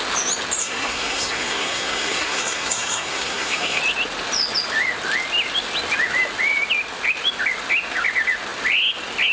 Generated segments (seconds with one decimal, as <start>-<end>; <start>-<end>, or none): 0.6-3.8